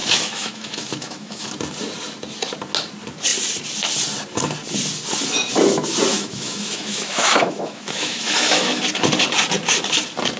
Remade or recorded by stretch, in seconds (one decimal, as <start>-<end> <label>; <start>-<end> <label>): 0.0-1.5 remade; 1.5-6.1 recorded; 6.1-8.8 remade; 8.8-10.4 recorded